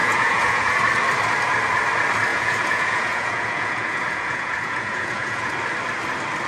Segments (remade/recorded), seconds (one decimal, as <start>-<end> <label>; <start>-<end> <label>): 0.0-0.7 remade; 0.7-2.3 recorded; 2.3-5.5 remade; 5.5-6.5 recorded